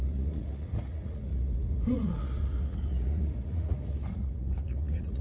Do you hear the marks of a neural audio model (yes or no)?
yes